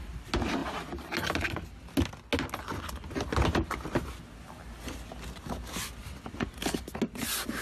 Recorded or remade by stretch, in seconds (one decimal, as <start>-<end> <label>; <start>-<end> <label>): 0.0-7.6 recorded